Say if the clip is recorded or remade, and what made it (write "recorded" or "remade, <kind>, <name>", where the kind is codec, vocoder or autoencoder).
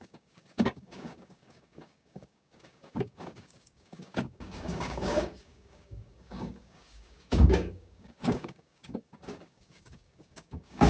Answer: remade, codec, DAC